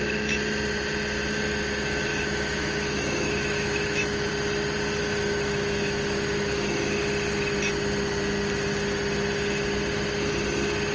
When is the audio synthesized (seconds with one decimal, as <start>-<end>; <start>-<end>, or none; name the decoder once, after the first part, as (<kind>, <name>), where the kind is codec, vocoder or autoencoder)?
2.1-4.3 (autoencoder, DAC-VAE); 5.0-6.8